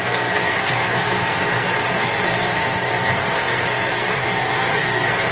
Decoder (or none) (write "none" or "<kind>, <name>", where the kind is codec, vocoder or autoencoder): codec, SNAC